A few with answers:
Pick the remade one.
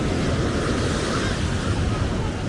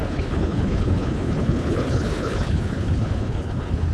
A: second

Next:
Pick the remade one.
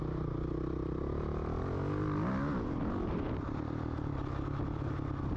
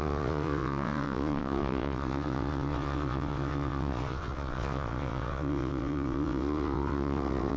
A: second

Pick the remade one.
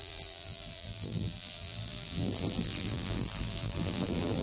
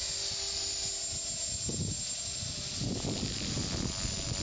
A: first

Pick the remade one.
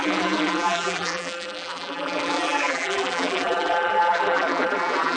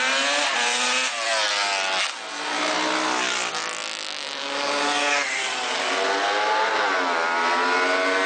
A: first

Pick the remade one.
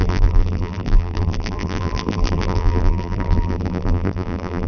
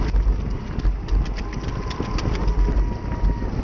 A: first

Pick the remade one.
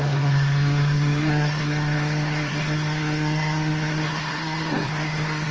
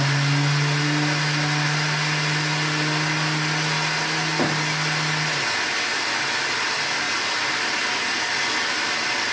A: first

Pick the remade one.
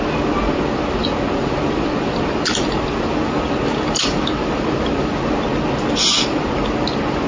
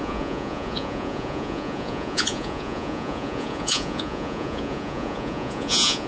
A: second